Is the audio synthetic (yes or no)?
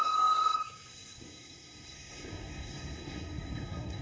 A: yes